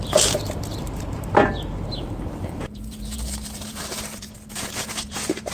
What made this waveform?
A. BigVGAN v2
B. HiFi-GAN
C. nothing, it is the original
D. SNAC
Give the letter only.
A